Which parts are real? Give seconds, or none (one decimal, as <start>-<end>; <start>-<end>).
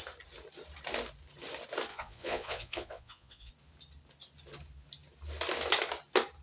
0.0-1.9; 3.5-6.4